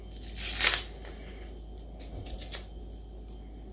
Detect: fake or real real